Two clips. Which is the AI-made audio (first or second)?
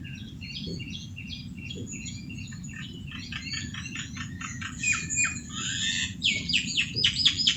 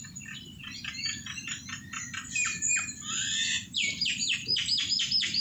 first